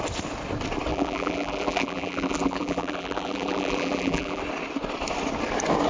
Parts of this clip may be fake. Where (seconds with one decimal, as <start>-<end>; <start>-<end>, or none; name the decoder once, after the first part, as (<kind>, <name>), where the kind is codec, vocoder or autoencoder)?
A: 0.9-4.4 (vocoder, BigVGAN v2)